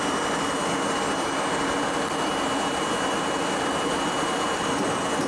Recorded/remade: remade